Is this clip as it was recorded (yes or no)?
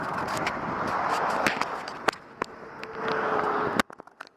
yes